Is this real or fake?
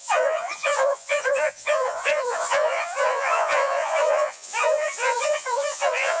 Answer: fake